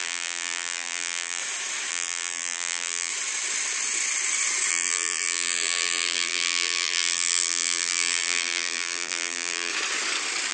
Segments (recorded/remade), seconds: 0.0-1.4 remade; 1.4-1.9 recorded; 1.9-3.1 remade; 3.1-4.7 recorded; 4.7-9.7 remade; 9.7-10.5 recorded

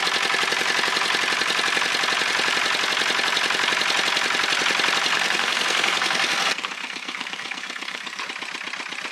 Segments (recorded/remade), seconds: 0.0-5.1 recorded; 5.1-8.2 remade; 8.2-9.1 recorded

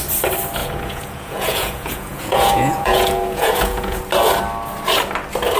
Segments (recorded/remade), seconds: 0.0-0.6 recorded; 0.6-4.0 remade; 4.0-5.6 recorded

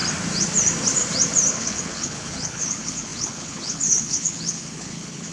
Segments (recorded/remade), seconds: 0.0-1.5 recorded; 1.5-5.3 remade

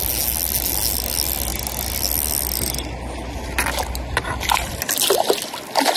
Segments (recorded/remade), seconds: 0.0-6.0 recorded

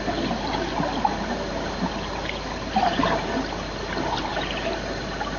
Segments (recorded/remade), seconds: 0.0-5.4 recorded

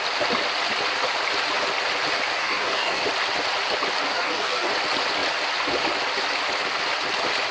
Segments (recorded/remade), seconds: 0.0-2.4 recorded; 2.4-3.0 remade; 3.0-4.1 recorded; 4.1-4.7 remade; 4.7-7.5 recorded